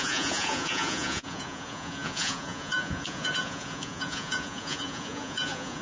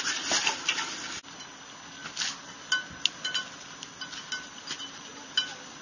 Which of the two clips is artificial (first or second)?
first